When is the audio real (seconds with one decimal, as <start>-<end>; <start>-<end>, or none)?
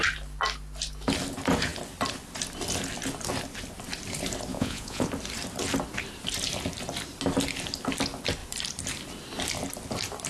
0.0-4.5; 5.1-10.3